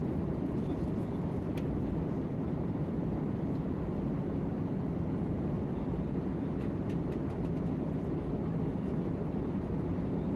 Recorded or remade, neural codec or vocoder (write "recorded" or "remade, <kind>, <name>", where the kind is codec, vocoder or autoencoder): recorded